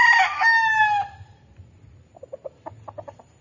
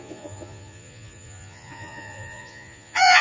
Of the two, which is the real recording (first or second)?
first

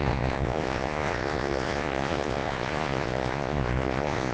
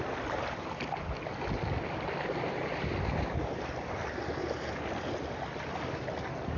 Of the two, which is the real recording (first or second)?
second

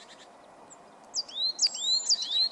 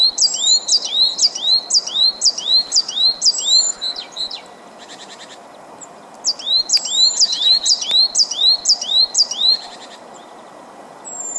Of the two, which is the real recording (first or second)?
first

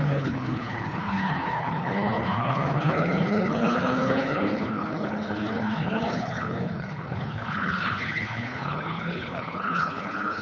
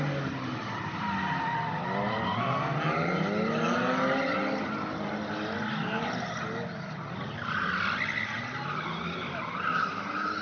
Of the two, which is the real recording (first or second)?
second